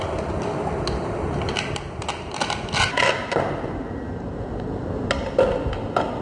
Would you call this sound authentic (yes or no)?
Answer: yes